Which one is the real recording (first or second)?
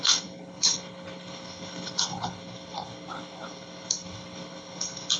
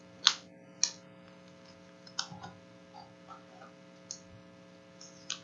second